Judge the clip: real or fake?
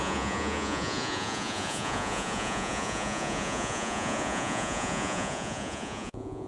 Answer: fake